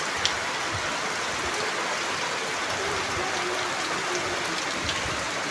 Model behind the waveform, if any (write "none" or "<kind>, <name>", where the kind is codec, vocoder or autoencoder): none